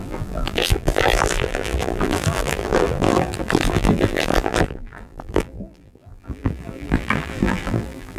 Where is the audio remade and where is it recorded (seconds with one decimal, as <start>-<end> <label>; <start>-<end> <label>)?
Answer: 0.0-8.2 remade